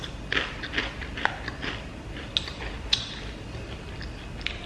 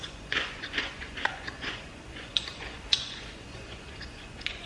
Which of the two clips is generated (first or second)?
second